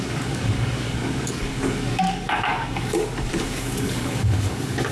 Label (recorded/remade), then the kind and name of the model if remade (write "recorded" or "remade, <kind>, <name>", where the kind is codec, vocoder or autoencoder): remade, codec, DAC